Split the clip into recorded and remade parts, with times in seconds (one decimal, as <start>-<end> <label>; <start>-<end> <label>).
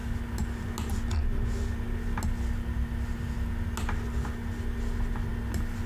0.0-5.9 recorded